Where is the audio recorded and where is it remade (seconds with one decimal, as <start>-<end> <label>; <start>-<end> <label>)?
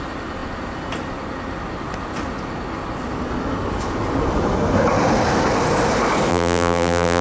0.0-6.3 recorded; 6.3-7.2 remade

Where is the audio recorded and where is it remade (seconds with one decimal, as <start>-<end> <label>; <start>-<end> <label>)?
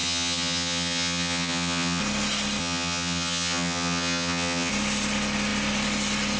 0.0-2.0 remade; 2.0-2.6 recorded; 2.6-4.7 remade; 4.7-6.4 recorded